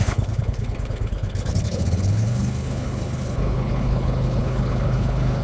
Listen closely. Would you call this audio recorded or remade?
remade